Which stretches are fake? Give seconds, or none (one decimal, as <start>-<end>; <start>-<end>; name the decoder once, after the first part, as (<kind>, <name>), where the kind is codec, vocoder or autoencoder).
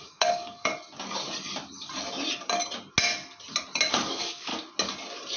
0.0-0.7 (codec, DAC); 3.9-4.5